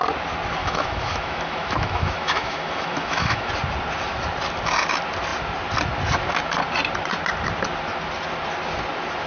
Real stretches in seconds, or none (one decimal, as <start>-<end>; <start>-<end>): 0.0-0.6; 3.5-9.3